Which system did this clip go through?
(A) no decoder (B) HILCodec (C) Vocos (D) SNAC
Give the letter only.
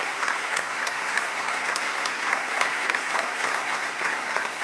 D